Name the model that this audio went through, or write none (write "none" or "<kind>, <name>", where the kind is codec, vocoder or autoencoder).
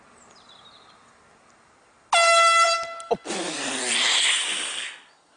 none